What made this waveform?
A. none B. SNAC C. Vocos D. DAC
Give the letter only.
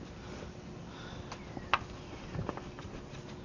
A